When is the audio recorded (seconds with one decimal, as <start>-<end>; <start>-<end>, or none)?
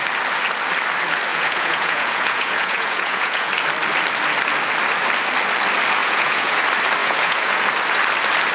0.0-1.3; 3.5-6.0; 6.6-7.0; 7.6-8.5